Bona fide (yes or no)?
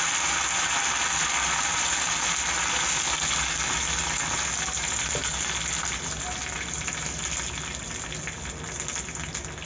yes